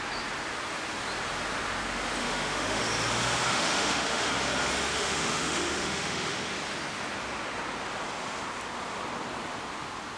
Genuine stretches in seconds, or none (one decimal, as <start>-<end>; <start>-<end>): 0.0-2.2; 2.8-3.5; 4.3-4.9; 6.5-10.2